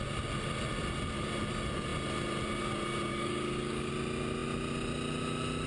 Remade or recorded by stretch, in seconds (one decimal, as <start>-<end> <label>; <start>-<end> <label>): 0.0-3.1 recorded; 3.1-3.9 remade; 3.9-5.7 recorded